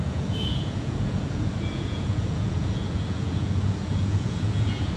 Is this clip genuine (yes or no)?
no